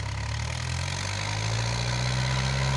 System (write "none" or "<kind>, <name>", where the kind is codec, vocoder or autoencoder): none